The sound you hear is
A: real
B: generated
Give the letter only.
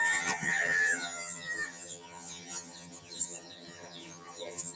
B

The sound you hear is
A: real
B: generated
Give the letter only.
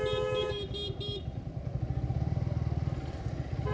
A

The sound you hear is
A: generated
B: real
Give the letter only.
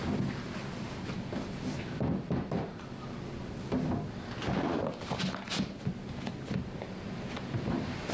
B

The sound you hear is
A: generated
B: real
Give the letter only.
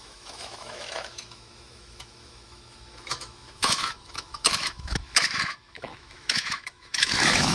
A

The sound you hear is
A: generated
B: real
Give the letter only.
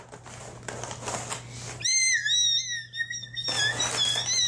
B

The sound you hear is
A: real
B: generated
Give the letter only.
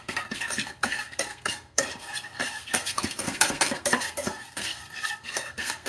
B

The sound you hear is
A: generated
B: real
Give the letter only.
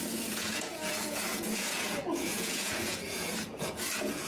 A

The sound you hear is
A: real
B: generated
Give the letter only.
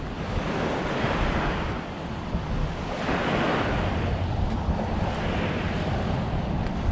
A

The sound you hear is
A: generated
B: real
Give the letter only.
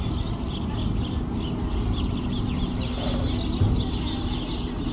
B